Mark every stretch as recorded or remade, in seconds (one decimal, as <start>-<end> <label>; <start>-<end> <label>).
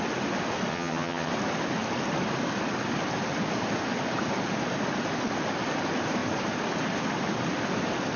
0.0-0.7 recorded; 0.7-1.3 remade; 1.3-8.2 recorded